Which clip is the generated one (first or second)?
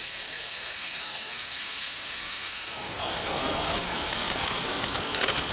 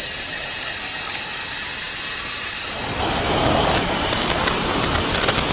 first